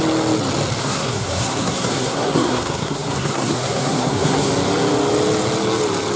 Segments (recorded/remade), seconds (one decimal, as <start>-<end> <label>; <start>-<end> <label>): 0.0-0.8 recorded; 0.8-4.5 remade; 4.5-6.2 recorded